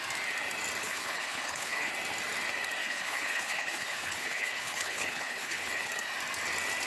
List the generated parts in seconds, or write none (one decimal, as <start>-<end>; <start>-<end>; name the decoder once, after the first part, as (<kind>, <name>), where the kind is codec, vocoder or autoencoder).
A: 0.8-1.9 (codec, HILCodec); 2.8-5.9